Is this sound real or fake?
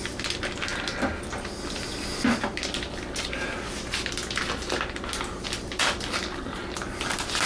real